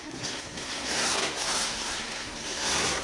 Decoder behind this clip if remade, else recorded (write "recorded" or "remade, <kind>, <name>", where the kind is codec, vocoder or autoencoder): remade, codec, SNAC